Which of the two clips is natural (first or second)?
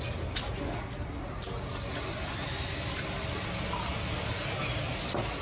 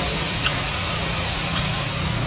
first